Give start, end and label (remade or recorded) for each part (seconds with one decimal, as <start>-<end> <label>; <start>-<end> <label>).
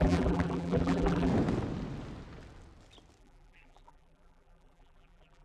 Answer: 0.0-1.3 remade; 1.3-3.2 recorded; 3.2-5.4 remade